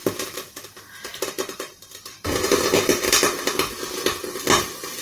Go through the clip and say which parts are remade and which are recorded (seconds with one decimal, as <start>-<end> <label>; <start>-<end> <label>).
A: 0.0-0.7 remade; 0.7-1.1 recorded; 1.1-2.6 remade; 2.6-5.0 recorded